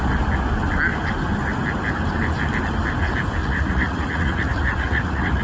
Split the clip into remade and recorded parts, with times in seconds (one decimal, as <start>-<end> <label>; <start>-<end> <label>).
0.0-3.4 recorded; 3.4-5.4 remade